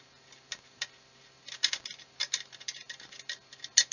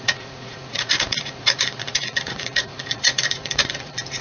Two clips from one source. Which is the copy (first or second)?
second